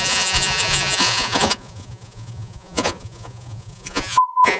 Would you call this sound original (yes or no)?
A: no